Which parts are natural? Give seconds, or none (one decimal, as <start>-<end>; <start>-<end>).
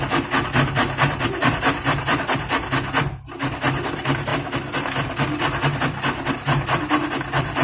0.0-7.6